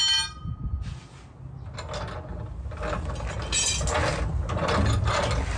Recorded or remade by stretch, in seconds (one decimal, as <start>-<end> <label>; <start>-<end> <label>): 0.0-5.6 recorded